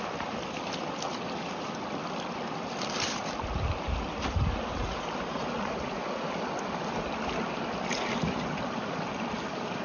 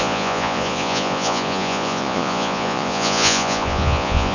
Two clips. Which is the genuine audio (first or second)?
first